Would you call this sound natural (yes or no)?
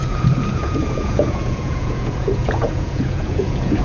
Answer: no